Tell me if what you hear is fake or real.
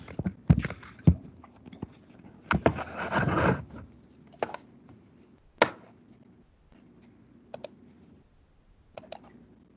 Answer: real